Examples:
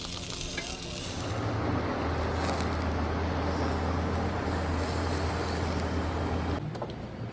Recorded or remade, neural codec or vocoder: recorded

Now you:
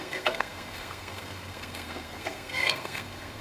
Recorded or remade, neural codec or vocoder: remade, codec, SNAC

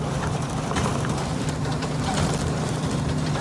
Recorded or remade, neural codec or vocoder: remade, vocoder, BigVGAN v2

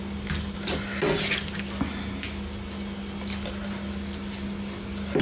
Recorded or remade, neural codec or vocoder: recorded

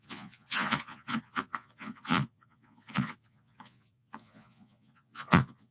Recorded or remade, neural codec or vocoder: remade, vocoder, Vocos